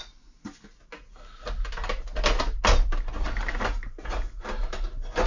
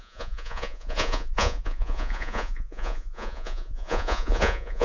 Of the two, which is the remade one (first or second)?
second